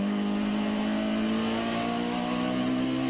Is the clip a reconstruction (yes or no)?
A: no